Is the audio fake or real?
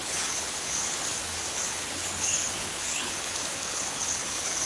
fake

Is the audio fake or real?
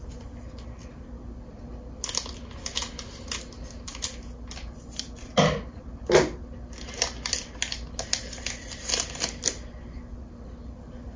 real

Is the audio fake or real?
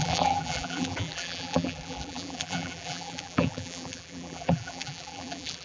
fake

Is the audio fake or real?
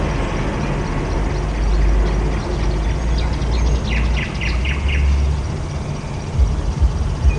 real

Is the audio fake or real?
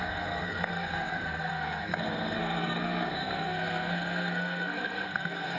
fake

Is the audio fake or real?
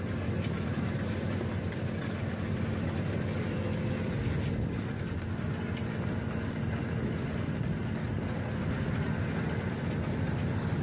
real